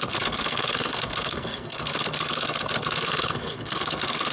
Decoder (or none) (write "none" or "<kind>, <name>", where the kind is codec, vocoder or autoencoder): codec, SNAC